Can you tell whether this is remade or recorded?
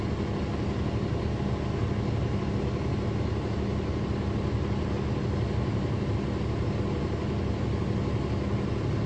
recorded